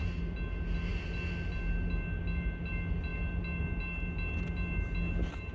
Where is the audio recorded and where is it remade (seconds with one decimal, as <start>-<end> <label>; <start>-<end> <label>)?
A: 0.0-5.5 recorded